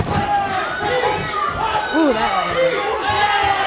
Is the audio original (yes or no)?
yes